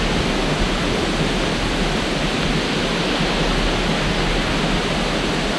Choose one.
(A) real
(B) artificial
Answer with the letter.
A